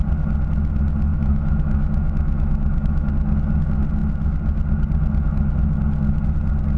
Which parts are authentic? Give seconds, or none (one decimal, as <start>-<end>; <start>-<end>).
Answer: 0.0-1.1; 3.1-6.8